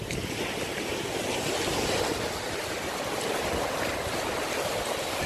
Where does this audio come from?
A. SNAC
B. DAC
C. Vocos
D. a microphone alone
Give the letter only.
D